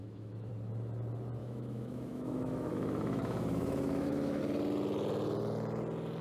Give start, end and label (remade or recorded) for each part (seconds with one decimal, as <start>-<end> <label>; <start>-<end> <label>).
0.0-0.5 remade; 0.5-1.4 recorded; 1.4-4.4 remade; 4.4-6.2 recorded